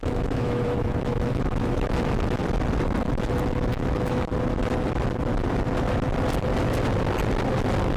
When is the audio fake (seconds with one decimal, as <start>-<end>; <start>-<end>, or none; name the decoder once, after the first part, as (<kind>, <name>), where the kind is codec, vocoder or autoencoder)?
0.0-2.4 (autoencoder, DAC-VAE); 3.0-4.3